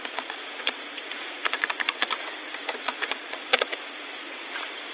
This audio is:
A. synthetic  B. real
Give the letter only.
A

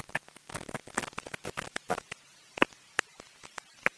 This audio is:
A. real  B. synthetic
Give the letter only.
A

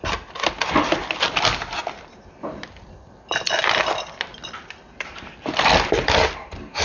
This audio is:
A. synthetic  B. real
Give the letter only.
B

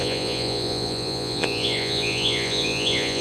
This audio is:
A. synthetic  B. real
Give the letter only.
A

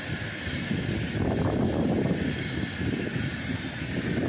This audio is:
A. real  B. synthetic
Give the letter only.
A